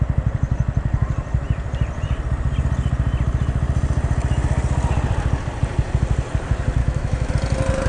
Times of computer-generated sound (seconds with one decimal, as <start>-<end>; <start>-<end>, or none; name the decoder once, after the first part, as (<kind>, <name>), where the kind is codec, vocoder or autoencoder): 6.8-7.3 (autoencoder, DAC-VAE)